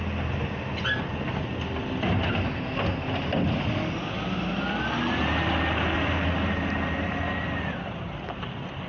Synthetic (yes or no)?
no